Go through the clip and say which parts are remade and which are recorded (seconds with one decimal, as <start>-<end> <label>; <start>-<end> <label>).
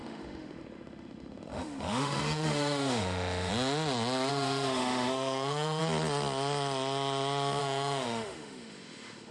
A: 0.0-3.5 remade; 3.5-4.3 recorded; 4.3-5.8 remade; 5.8-7.6 recorded; 7.6-9.3 remade